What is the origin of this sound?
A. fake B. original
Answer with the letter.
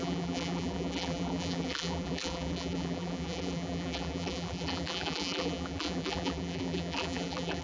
A